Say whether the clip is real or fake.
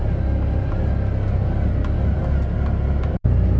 real